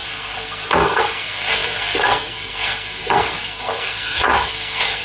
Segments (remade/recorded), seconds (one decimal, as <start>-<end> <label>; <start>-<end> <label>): 0.0-5.0 remade